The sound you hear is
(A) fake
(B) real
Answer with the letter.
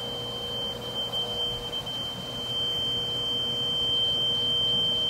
B